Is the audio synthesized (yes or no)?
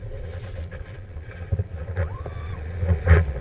yes